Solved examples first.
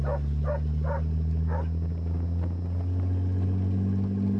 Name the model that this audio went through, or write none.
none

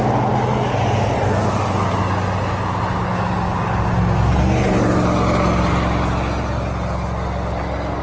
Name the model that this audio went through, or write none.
none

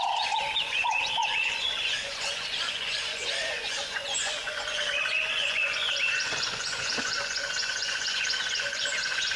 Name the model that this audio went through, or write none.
vocoder, Vocos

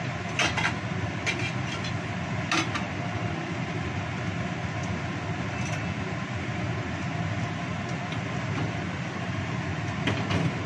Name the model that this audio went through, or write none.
none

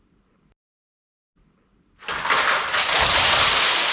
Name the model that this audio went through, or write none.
none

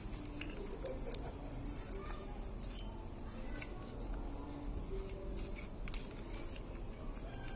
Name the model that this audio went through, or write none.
none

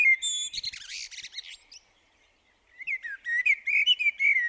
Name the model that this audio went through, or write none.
none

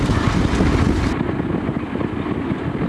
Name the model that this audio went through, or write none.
none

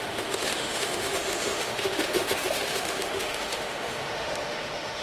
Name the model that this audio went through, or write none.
autoencoder, DAC-VAE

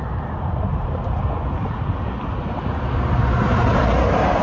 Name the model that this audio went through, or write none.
none